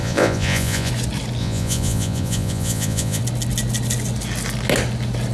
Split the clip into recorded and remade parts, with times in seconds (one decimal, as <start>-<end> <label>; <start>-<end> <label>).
0.0-0.9 remade; 0.9-1.4 recorded; 1.4-3.2 remade; 3.2-5.3 recorded